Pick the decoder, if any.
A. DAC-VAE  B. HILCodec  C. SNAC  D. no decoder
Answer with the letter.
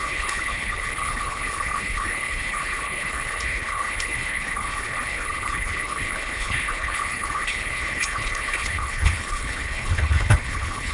B